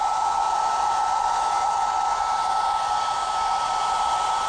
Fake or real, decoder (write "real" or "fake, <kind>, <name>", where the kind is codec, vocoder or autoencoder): real